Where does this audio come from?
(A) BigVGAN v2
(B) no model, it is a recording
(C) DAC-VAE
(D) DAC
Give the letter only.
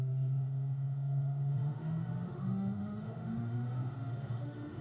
C